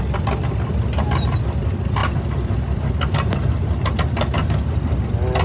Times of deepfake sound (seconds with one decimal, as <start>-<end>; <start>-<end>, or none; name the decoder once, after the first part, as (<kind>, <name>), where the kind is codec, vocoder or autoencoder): none